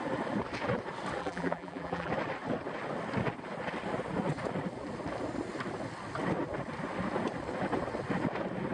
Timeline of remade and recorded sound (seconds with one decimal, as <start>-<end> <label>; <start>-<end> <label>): 0.0-1.2 recorded; 1.2-2.1 remade; 2.1-8.7 recorded